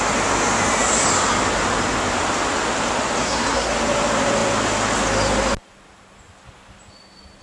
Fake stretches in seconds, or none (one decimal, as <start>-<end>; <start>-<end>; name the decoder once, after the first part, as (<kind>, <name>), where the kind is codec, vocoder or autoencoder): 3.2-3.7 (codec, SNAC)